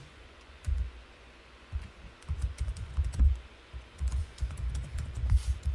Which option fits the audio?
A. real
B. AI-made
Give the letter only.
B